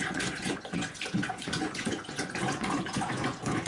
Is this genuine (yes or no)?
no